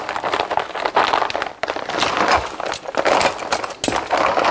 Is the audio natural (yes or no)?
yes